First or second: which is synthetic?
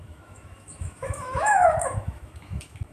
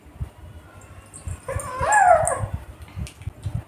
first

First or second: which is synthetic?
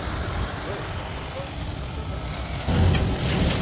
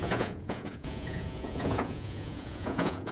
second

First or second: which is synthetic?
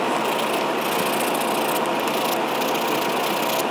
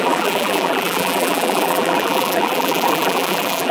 second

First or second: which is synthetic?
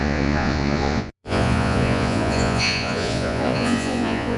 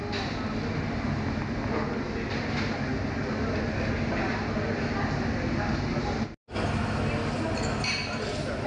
first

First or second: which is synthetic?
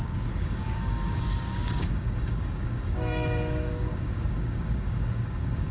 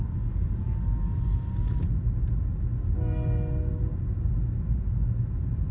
first